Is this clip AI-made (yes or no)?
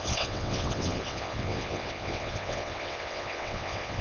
yes